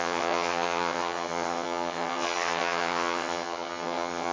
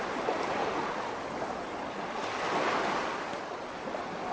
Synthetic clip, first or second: first